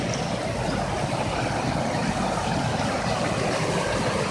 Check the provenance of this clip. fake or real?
real